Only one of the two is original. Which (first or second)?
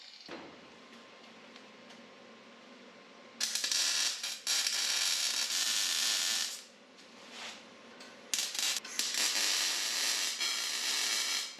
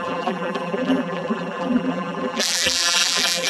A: first